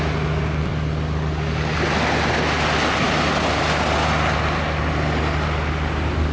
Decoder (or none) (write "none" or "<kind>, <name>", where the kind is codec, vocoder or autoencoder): none